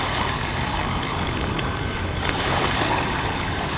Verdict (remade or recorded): remade